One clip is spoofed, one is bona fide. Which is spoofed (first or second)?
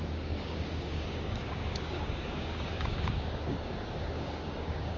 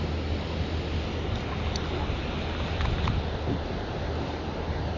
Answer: first